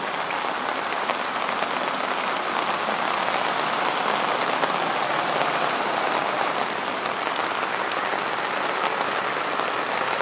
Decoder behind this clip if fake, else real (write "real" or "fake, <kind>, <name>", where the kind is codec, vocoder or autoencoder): real